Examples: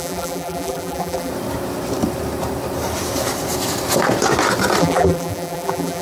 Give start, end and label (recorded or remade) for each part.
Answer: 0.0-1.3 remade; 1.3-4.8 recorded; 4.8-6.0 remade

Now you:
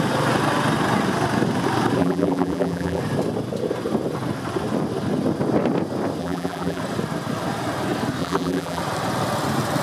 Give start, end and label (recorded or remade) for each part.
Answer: 0.0-2.0 recorded; 2.0-3.0 remade; 3.0-6.2 recorded; 6.2-6.8 remade; 6.8-8.2 recorded; 8.2-8.8 remade; 8.8-9.8 recorded

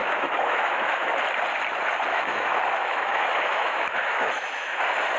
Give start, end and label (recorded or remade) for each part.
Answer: 0.0-1.1 remade; 1.1-2.1 recorded; 2.1-4.8 remade; 4.8-5.2 recorded

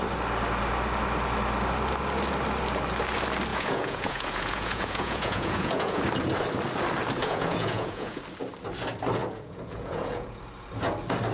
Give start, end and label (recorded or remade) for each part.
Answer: 0.0-3.5 recorded; 3.5-6.0 remade; 6.0-7.2 recorded; 7.2-8.2 remade; 8.2-9.2 recorded; 9.2-10.4 remade; 10.4-11.3 recorded

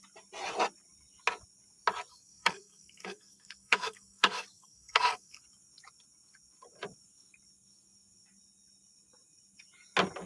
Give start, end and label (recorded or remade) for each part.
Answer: 0.0-2.1 recorded; 2.1-5.4 remade; 5.4-10.3 recorded

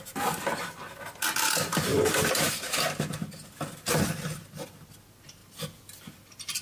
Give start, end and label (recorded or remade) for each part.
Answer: 0.0-6.6 recorded